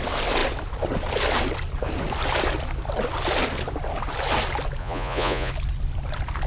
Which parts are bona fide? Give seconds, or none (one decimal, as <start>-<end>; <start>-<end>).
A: 0.0-4.8; 5.5-6.5